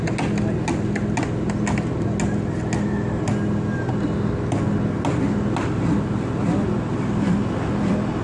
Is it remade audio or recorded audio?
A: recorded